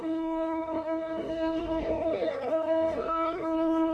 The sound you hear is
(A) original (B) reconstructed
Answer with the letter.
B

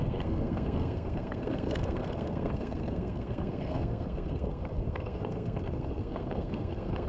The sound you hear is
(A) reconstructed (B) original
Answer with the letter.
A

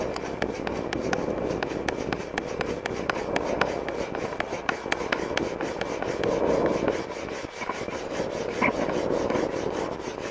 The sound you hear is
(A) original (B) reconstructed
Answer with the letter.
A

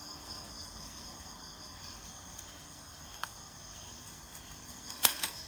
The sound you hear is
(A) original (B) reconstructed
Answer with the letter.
B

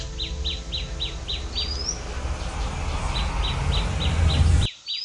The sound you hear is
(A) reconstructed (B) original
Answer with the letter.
B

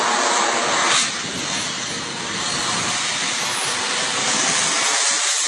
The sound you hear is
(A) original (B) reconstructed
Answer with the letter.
A